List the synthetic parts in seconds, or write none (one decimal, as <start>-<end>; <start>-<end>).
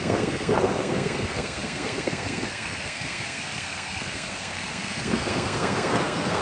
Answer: 0.0-6.4